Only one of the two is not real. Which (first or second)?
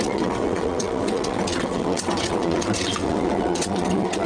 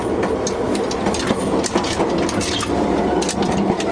first